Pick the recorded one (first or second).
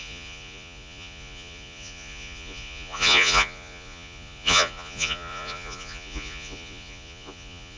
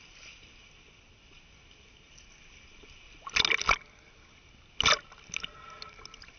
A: second